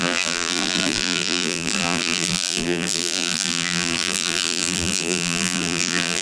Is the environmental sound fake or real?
fake